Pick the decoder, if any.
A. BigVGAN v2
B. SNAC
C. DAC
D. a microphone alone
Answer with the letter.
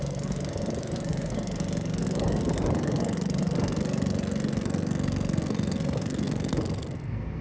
B